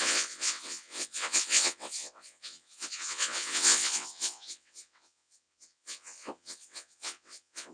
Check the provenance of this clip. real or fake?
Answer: fake